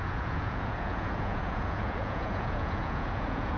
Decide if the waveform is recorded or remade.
remade